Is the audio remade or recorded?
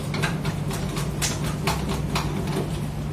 recorded